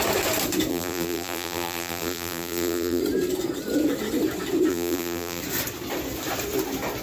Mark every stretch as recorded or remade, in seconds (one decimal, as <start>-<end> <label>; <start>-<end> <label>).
0.0-0.7 recorded; 0.7-3.0 remade; 3.0-4.7 recorded; 4.7-5.4 remade; 5.4-7.0 recorded